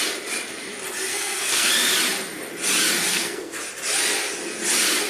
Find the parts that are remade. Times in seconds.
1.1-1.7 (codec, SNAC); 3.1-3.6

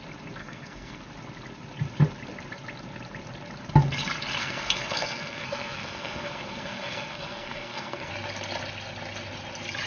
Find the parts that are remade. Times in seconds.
0.4-1.0 (codec, SNAC); 4.4-8.1

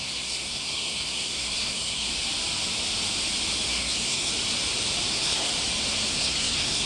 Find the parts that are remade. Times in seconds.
0.0-2.1 (codec, SNAC); 3.7-4.3; 5.1-5.5; 6.1-6.9

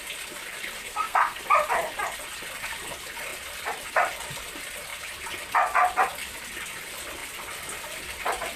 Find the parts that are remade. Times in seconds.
0.8-1.4 (codec, SNAC)

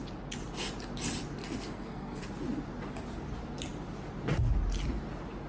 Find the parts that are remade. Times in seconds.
1.4-2.2 (codec, SNAC)

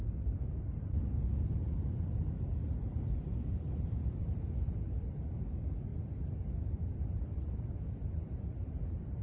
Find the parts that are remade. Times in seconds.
none

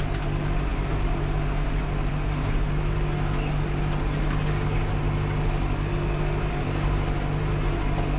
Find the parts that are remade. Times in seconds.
none

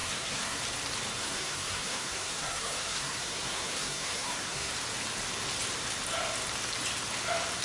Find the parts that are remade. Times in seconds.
0.0-0.6 (codec, SNAC); 1.2-4.7